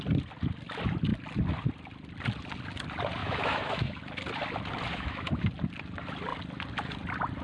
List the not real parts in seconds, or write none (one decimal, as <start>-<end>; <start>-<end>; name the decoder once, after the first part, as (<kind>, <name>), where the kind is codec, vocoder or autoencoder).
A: 3.2-4.0 (autoencoder, DAC-VAE); 4.9-5.4